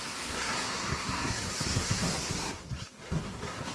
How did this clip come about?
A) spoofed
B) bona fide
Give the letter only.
A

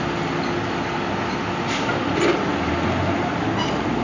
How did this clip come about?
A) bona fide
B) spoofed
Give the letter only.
A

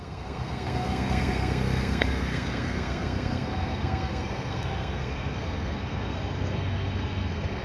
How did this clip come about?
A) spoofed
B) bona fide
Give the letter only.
A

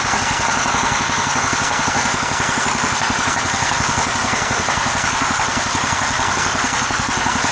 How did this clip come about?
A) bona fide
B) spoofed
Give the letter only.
B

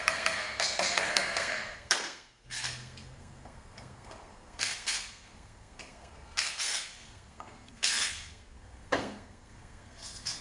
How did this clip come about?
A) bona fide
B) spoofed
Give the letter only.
B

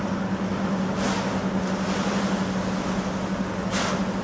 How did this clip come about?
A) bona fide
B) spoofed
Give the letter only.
A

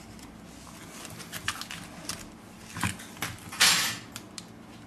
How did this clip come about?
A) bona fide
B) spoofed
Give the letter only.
A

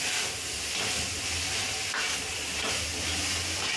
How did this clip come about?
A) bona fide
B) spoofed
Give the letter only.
A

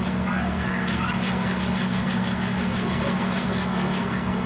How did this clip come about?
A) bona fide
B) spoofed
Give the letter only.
B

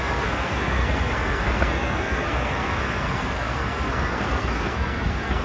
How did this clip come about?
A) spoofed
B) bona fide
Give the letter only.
A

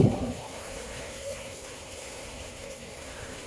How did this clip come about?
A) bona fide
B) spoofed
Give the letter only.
B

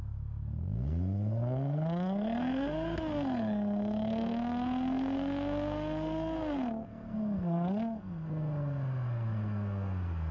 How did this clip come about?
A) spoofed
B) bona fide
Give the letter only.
A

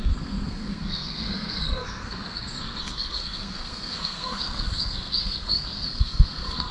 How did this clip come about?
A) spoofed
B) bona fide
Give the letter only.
A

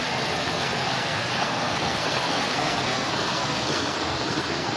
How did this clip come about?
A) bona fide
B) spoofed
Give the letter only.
B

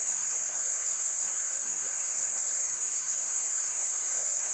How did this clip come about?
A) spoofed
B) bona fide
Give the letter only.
A